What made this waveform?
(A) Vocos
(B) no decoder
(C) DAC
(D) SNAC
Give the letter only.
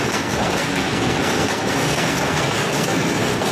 D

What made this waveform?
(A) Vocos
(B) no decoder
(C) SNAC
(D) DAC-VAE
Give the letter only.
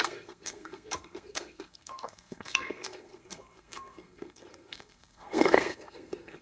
C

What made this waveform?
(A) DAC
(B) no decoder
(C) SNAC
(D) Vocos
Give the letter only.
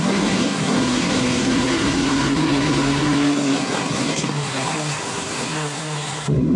C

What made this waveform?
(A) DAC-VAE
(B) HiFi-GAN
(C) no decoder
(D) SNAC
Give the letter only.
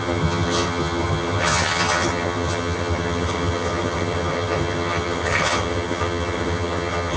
B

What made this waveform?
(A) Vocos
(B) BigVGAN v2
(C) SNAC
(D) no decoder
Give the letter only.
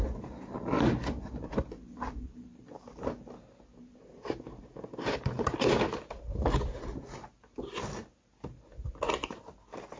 D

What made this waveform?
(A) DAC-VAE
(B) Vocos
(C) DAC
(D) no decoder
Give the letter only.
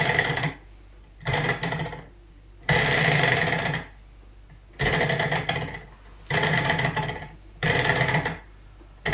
D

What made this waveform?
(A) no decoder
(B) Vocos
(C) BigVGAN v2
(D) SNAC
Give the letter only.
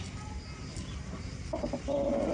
A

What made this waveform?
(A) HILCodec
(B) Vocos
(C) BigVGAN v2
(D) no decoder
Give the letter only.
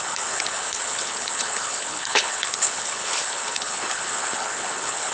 A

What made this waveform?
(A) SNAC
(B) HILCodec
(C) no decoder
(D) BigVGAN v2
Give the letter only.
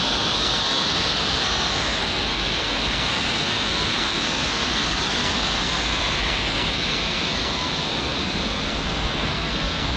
A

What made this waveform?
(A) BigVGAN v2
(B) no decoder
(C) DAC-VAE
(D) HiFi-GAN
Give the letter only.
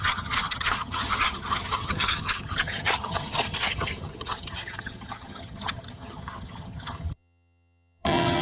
D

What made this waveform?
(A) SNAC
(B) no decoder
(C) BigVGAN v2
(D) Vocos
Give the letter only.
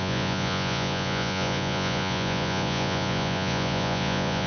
D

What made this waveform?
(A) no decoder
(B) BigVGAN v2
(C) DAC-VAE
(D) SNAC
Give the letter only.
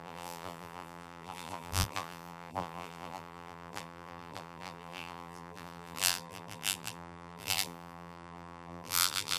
B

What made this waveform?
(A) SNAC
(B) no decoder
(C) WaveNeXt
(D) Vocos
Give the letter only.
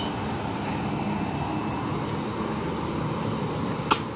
B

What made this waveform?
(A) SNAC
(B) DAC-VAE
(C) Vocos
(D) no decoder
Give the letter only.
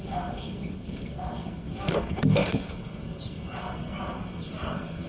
A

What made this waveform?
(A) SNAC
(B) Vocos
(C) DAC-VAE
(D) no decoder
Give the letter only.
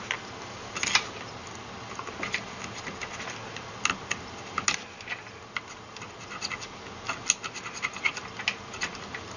D